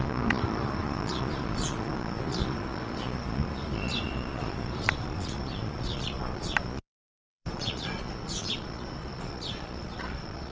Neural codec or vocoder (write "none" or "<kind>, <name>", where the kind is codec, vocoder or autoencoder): vocoder, Vocos